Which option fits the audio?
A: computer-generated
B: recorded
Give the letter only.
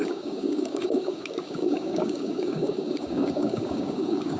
A